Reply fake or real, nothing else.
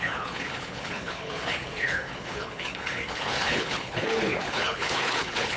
fake